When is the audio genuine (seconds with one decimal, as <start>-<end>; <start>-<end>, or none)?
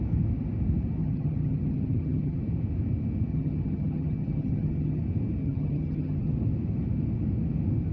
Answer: 0.0-1.0; 2.4-3.3; 5.0-5.4; 6.3-7.9